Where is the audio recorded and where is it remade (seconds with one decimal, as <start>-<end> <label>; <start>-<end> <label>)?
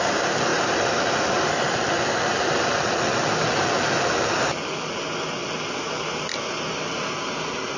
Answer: 0.0-7.8 recorded